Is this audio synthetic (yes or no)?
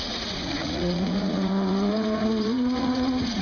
yes